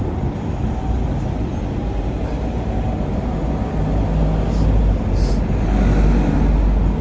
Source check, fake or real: real